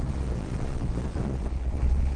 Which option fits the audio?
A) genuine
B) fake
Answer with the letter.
B